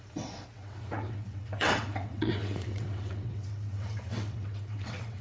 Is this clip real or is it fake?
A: fake